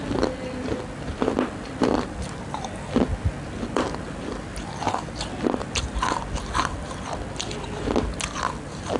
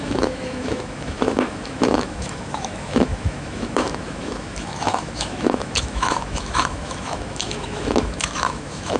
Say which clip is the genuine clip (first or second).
first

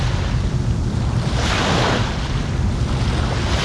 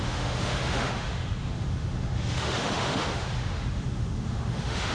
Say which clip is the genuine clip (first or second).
first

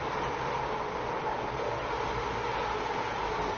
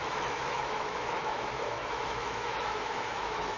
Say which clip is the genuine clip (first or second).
first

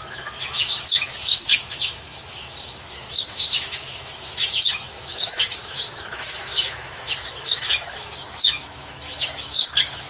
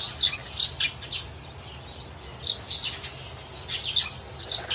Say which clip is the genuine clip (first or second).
second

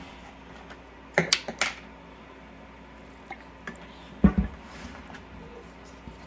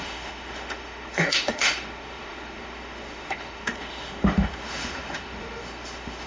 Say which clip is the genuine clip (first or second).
first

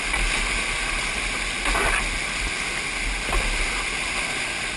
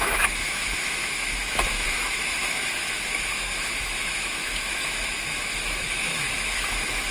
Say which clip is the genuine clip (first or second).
first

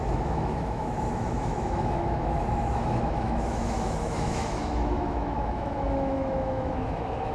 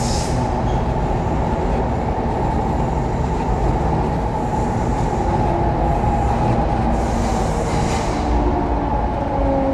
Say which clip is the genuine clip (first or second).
second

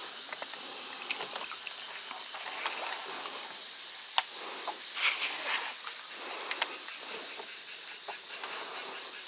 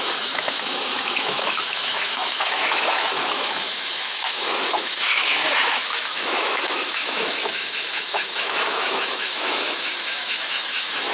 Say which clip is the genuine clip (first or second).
first